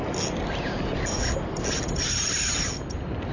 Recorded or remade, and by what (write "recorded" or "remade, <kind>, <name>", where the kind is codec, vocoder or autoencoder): recorded